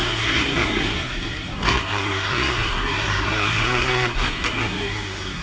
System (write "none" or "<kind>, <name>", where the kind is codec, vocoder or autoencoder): codec, SNAC